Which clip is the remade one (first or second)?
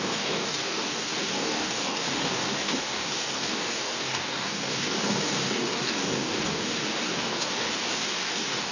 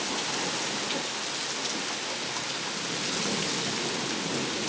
first